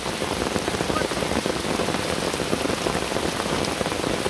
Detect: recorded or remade recorded